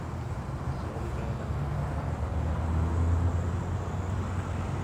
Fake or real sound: real